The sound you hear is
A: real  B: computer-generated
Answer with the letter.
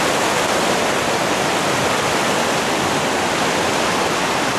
B